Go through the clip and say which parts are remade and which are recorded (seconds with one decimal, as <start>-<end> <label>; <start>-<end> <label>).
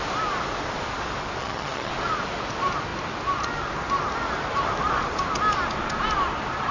0.0-1.4 recorded; 1.4-1.9 remade; 1.9-6.7 recorded